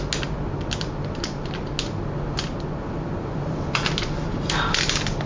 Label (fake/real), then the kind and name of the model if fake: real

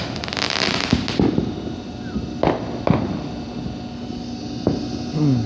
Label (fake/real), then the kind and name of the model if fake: real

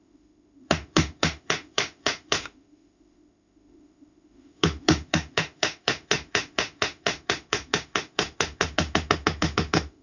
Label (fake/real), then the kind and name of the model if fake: fake, autoencoder, DAC-VAE